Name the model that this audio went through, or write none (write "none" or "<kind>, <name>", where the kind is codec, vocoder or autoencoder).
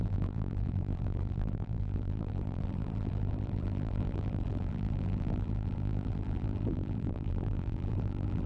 vocoder, BigVGAN v2